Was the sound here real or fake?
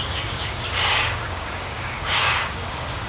fake